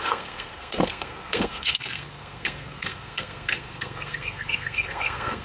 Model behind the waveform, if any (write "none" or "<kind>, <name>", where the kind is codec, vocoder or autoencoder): codec, SNAC